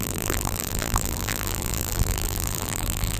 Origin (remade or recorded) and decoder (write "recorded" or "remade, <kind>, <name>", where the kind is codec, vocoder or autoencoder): remade, vocoder, BigVGAN v2